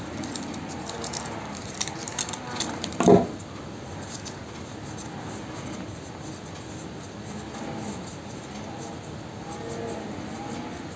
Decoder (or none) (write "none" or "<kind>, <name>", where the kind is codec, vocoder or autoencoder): none